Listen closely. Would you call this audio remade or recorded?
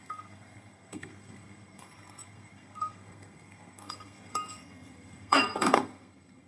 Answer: remade